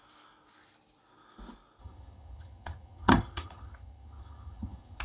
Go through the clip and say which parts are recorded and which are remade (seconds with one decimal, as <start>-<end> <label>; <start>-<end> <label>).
0.0-1.8 recorded; 1.8-5.0 remade